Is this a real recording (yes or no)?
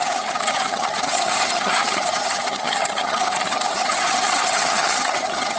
no